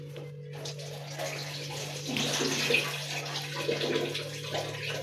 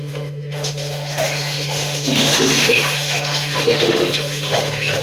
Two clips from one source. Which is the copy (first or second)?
second